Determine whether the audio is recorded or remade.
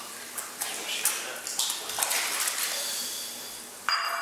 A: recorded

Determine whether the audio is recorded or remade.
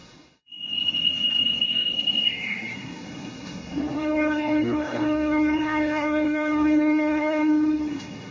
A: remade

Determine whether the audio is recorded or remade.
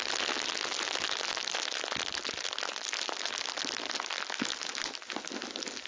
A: recorded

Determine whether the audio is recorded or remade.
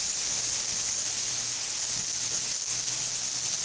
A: recorded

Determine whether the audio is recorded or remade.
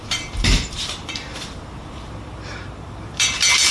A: remade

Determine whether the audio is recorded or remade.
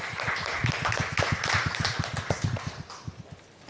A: recorded